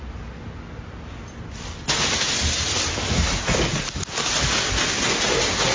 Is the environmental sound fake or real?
real